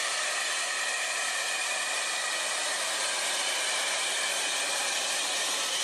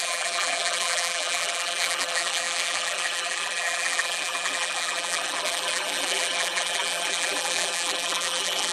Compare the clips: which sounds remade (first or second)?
second